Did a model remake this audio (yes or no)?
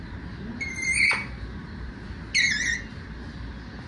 no